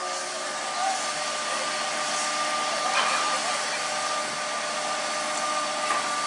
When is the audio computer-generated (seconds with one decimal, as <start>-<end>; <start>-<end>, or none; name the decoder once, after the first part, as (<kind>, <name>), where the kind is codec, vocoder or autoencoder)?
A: none